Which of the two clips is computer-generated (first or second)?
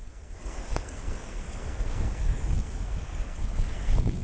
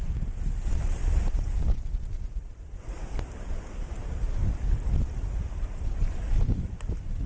first